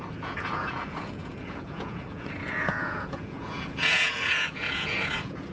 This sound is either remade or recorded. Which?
remade